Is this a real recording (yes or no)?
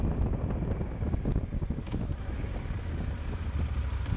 yes